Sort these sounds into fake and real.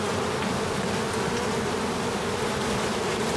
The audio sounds real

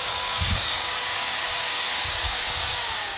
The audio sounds fake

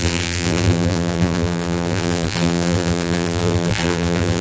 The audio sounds fake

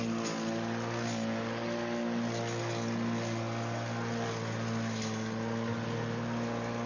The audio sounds real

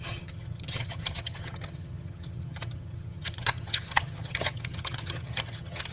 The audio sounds fake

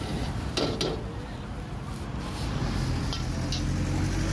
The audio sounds real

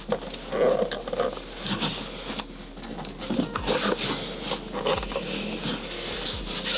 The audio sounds real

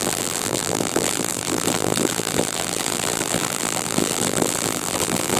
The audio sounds fake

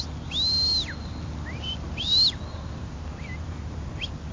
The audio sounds real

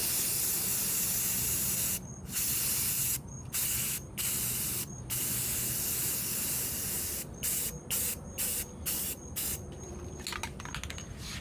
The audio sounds real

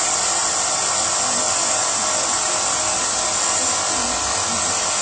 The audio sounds real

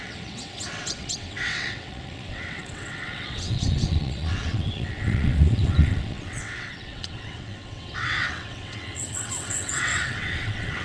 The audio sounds fake